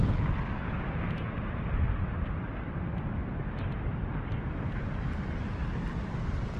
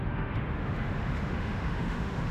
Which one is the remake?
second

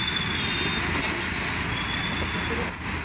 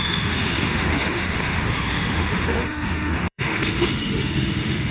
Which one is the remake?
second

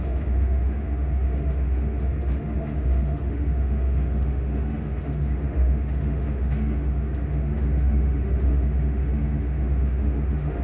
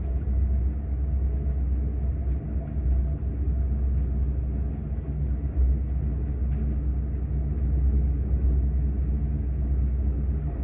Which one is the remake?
first